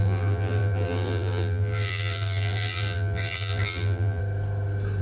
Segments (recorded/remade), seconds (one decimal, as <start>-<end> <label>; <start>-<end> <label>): 0.0-4.2 remade; 4.2-5.0 recorded